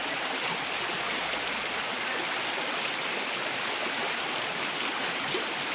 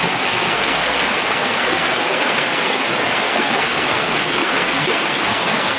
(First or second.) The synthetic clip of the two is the second